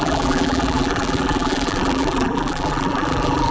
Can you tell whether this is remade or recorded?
remade